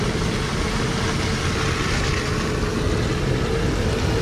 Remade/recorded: recorded